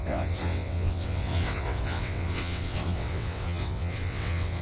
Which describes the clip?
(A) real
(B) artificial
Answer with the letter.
B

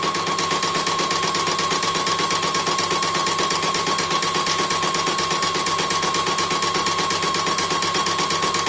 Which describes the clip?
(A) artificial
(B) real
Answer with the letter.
B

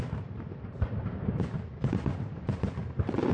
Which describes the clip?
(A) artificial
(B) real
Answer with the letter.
A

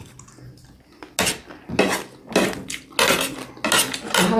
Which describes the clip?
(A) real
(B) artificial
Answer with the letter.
A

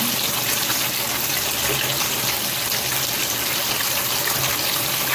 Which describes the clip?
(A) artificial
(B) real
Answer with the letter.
B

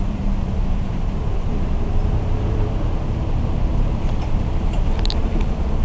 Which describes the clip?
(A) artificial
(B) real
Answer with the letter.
A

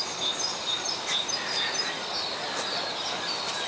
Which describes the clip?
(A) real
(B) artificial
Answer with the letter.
A